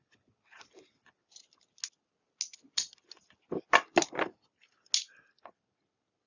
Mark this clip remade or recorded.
recorded